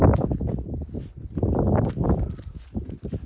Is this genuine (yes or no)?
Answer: yes